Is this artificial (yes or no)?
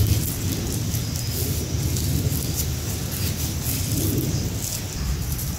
no